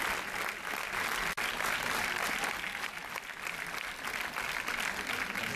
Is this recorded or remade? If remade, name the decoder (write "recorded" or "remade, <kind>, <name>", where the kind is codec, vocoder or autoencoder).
recorded